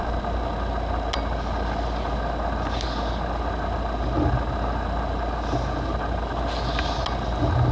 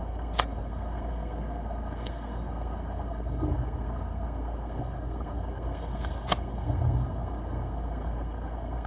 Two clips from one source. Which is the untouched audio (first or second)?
first